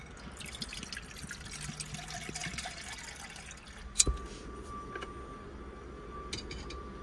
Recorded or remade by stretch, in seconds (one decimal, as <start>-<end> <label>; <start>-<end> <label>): 0.0-7.0 recorded